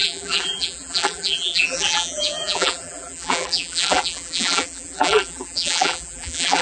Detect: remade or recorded remade